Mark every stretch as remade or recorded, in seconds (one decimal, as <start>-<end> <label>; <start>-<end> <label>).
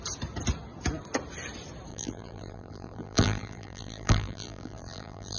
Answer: 0.0-1.9 recorded; 1.9-5.4 remade